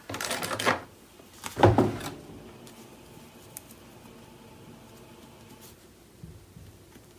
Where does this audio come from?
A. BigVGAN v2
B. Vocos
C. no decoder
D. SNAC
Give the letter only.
C